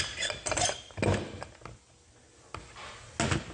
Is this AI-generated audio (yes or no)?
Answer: no